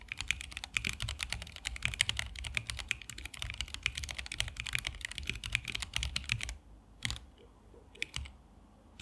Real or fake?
real